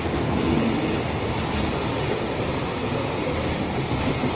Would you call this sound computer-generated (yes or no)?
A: no